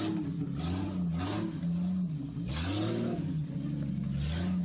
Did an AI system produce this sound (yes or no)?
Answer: no